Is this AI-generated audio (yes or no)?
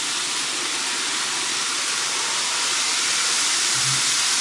no